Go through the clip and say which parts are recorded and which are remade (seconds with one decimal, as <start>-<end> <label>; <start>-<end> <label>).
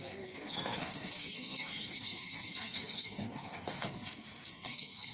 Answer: 0.0-5.1 remade